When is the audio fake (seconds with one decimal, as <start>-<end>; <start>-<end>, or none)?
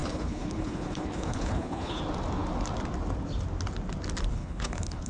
0.0-2.0; 4.3-5.1